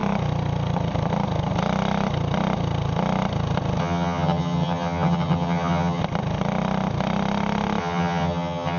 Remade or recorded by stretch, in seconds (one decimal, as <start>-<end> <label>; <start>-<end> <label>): 0.0-3.8 recorded; 3.8-6.0 remade; 6.0-7.8 recorded; 7.8-8.8 remade